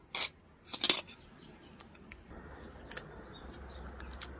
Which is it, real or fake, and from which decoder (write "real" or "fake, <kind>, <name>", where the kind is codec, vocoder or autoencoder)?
real